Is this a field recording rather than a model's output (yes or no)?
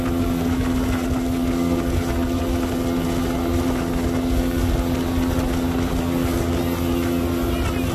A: yes